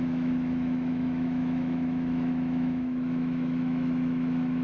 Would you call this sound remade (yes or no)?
yes